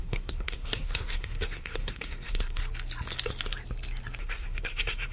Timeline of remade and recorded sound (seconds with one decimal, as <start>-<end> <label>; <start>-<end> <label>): 0.0-2.6 remade; 2.6-4.2 recorded; 4.2-5.1 remade